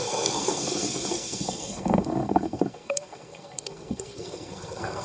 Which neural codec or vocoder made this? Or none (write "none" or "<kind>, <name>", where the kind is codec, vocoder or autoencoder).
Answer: codec, SNAC